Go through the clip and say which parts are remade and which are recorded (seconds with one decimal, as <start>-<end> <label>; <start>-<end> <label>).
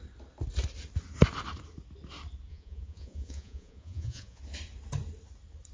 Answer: 0.0-2.5 recorded; 2.5-4.4 remade; 4.4-5.7 recorded